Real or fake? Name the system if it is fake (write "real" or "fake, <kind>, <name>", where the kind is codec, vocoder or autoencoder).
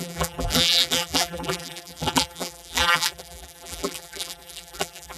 fake, vocoder, BigVGAN v2